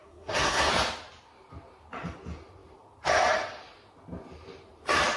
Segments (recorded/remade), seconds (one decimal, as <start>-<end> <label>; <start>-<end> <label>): 0.0-0.7 remade; 0.7-5.2 recorded